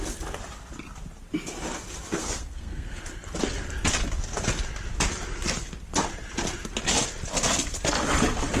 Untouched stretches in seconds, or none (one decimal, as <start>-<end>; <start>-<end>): 0.0-2.2; 3.0-8.6